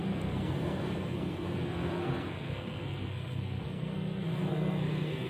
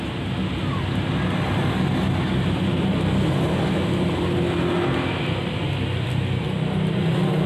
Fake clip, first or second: first